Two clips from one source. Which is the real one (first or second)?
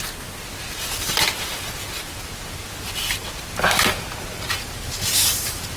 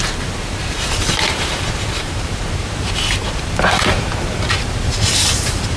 first